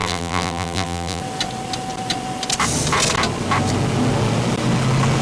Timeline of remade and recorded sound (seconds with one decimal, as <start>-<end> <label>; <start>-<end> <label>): 0.0-1.2 remade; 1.2-5.2 recorded